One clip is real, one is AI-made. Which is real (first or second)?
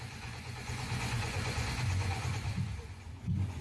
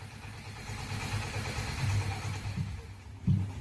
second